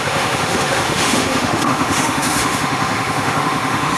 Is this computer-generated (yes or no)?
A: yes